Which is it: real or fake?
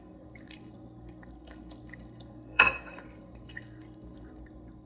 fake